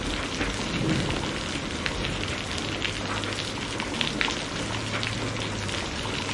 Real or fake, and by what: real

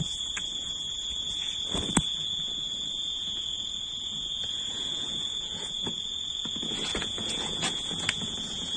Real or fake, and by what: fake, vocoder, Vocos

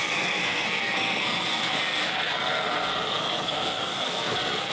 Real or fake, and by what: fake, codec, SNAC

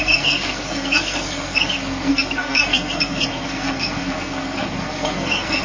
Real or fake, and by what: fake, codec, SNAC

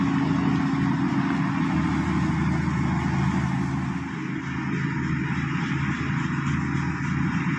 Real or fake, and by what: real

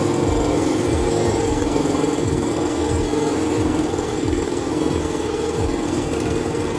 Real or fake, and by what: fake, codec, SNAC